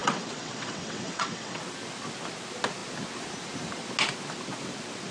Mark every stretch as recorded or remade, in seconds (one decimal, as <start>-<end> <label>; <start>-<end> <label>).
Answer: 0.0-1.6 remade; 1.6-5.1 recorded